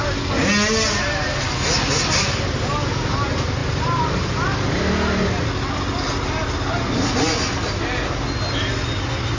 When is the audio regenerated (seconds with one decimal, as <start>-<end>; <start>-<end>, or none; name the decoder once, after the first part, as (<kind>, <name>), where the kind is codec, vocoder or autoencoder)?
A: none